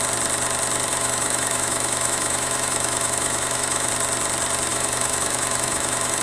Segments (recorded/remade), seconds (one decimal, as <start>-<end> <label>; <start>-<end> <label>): 0.0-0.9 recorded; 0.9-3.9 remade; 3.9-4.7 recorded; 4.7-6.2 remade